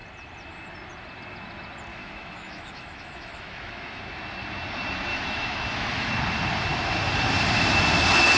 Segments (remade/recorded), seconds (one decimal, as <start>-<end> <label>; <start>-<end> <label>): 0.0-1.9 recorded; 1.9-4.0 remade; 4.0-5.1 recorded; 5.1-6.1 remade; 6.1-8.4 recorded